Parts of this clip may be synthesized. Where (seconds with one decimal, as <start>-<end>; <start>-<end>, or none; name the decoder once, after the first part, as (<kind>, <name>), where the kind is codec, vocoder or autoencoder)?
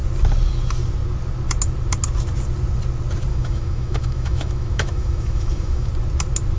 3.3-5.9 (autoencoder, DAC-VAE)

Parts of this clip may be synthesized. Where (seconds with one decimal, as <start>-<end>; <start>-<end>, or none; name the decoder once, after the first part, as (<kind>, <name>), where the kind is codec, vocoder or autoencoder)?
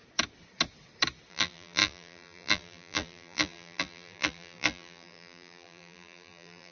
1.3-6.7 (vocoder, BigVGAN v2)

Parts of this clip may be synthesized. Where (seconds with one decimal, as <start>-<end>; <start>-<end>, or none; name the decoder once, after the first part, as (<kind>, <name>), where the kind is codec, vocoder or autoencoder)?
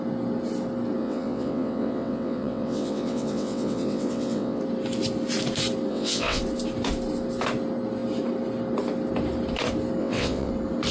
1.0-4.6 (vocoder, WaveNeXt); 5.9-6.4; 10.0-10.5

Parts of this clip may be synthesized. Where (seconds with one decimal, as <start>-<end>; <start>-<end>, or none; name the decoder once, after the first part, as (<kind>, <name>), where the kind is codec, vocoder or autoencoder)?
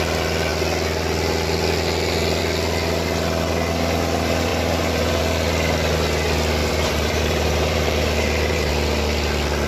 4.5-5.2 (vocoder, BigVGAN v2); 6.6-8.7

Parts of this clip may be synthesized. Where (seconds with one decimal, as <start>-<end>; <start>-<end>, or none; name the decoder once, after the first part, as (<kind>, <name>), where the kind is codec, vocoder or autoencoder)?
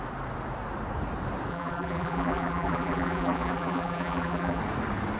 1.5-4.6 (vocoder, BigVGAN v2)